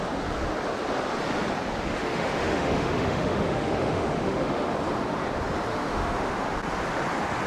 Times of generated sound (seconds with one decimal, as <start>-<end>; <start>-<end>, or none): 2.0-4.7; 5.7-6.3